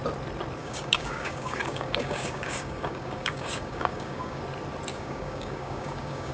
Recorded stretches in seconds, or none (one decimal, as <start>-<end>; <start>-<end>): 0.0-0.6; 4.4-4.9